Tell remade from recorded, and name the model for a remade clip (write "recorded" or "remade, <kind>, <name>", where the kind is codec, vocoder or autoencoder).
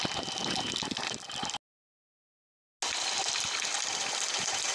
recorded